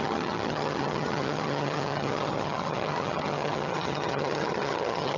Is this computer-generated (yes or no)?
yes